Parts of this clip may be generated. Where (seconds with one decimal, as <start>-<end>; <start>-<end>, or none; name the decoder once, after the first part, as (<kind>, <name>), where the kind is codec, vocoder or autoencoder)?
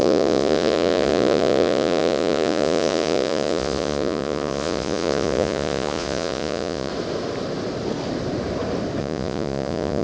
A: 0.0-6.9 (vocoder, Vocos); 9.0-10.0